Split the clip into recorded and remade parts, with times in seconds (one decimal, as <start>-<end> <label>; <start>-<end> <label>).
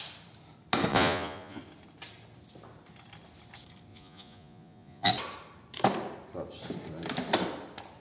0.0-0.9 recorded; 0.9-1.6 remade; 1.6-3.9 recorded; 3.9-5.1 remade; 5.1-8.0 recorded